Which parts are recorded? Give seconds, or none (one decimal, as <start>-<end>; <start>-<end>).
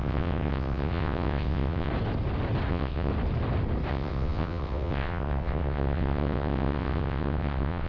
1.9-2.7; 3.1-3.9